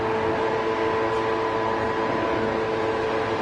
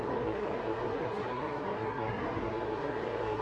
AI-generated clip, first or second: second